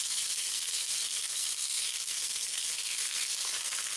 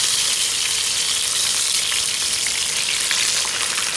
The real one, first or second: second